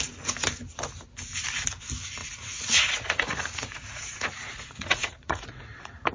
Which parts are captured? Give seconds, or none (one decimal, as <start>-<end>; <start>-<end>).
0.0-2.2